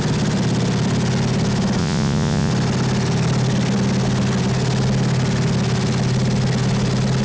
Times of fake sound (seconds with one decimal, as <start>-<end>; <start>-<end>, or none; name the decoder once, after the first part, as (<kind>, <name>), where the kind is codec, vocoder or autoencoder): 1.8-2.5 (vocoder, Vocos)